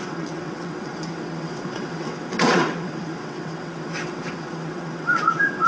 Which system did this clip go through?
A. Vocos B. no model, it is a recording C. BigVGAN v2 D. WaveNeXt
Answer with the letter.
D